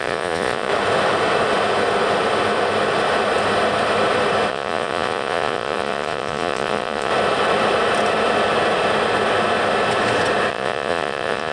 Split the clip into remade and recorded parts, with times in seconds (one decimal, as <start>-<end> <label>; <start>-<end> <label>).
0.0-0.7 remade; 0.7-4.5 recorded; 4.5-7.1 remade; 7.1-10.5 recorded; 10.5-11.5 remade

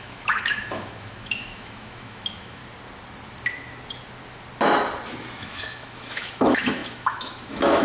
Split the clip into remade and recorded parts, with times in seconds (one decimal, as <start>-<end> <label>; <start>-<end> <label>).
0.0-2.6 remade; 2.6-5.4 recorded; 5.4-7.8 remade

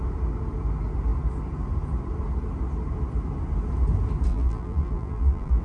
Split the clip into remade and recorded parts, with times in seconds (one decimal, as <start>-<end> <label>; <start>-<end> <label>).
0.0-4.3 recorded; 4.3-5.6 remade

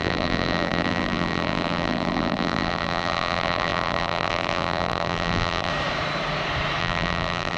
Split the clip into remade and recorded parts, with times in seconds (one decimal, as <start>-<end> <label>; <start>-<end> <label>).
0.0-5.7 remade; 5.7-6.8 recorded; 6.8-7.6 remade

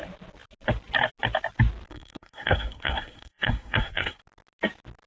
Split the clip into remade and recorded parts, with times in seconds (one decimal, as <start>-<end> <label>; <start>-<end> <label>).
0.0-1.9 recorded; 1.9-4.2 remade; 4.2-5.1 recorded

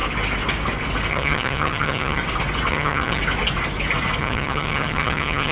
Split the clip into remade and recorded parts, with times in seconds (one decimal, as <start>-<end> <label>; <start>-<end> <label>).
0.0-1.1 recorded; 1.1-2.2 remade; 2.2-2.7 recorded; 2.7-3.2 remade; 3.2-4.2 recorded; 4.2-5.5 remade